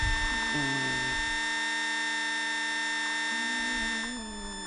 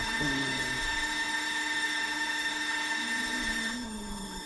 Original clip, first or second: first